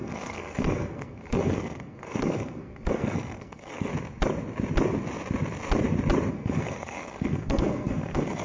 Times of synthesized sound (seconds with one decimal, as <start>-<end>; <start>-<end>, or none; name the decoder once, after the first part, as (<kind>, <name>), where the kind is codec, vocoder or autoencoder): 0.0-3.9 (codec, SNAC); 6.3-8.4